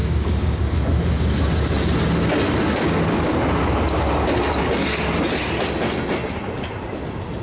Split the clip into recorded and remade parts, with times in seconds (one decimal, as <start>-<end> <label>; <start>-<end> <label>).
0.0-0.6 remade; 0.6-7.4 recorded